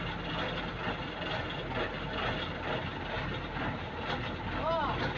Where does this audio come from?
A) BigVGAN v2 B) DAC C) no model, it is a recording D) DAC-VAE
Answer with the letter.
C